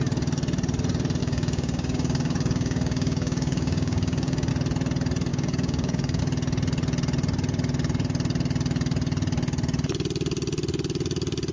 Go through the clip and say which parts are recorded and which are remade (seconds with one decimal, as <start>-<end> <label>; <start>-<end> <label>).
0.0-1.2 recorded; 1.2-4.5 remade; 4.5-5.3 recorded; 5.3-6.2 remade; 6.2-11.5 recorded